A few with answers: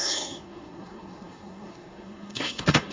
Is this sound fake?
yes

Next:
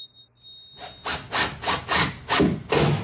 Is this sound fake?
no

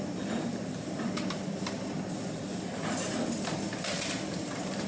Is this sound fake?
no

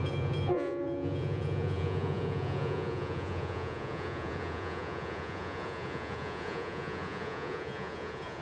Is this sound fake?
yes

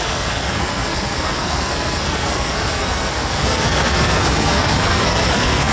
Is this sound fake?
yes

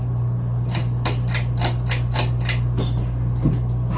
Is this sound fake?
no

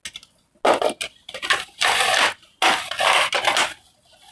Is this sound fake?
no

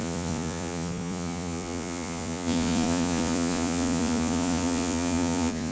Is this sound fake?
yes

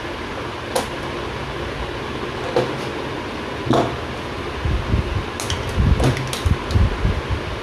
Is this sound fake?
no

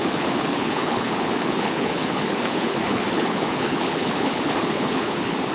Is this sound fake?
yes